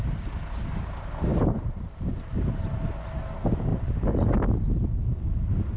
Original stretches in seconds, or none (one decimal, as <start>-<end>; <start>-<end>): 0.0-5.8